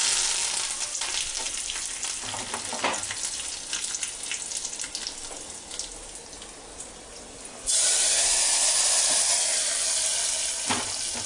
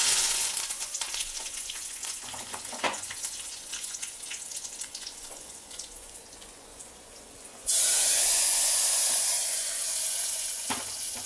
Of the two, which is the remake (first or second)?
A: second